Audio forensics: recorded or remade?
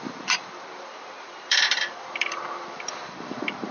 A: remade